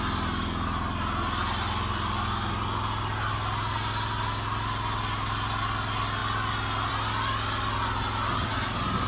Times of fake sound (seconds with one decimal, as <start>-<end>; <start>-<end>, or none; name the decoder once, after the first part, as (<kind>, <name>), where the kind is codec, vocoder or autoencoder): none